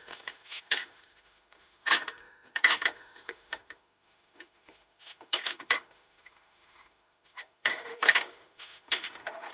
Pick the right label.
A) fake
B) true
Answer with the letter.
A